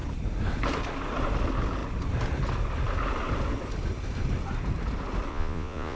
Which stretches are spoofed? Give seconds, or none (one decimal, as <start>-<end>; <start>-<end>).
5.3-6.0